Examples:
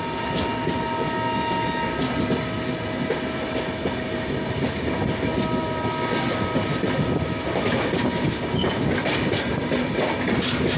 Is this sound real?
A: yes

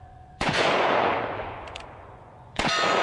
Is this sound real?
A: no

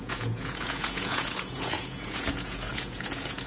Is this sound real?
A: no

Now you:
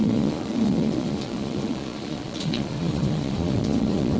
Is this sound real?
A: no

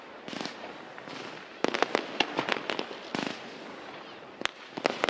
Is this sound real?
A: yes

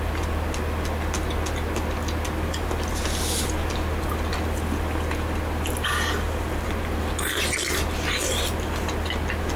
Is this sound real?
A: yes